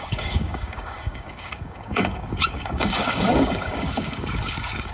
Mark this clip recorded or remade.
remade